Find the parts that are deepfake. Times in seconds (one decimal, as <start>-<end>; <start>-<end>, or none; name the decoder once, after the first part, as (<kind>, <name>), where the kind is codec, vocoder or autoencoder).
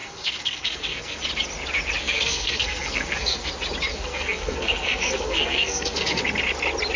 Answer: 0.0-1.2 (codec, SNAC); 2.0-3.5; 3.9-6.2